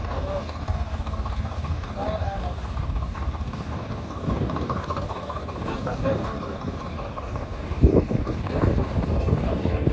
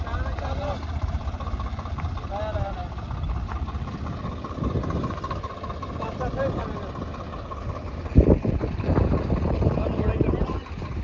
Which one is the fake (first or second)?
first